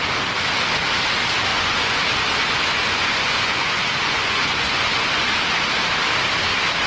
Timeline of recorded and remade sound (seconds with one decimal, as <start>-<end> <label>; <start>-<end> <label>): 0.0-1.5 recorded; 1.5-2.0 remade; 2.0-2.4 recorded; 2.4-5.3 remade; 5.3-6.9 recorded